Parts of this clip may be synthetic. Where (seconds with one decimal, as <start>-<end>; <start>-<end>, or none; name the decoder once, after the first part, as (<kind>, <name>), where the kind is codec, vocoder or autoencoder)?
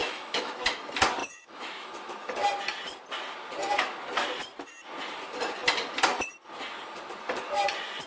0.0-0.5 (autoencoder, DAC-VAE); 1.2-1.9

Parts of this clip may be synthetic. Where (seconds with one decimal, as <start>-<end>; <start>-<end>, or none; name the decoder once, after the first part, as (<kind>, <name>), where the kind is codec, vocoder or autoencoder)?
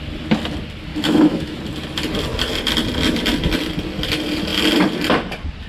0.9-1.6 (autoencoder, DAC-VAE)